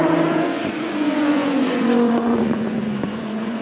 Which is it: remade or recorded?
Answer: remade